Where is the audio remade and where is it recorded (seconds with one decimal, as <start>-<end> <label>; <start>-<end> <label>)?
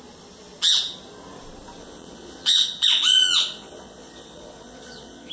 0.0-1.8 recorded; 1.8-5.3 remade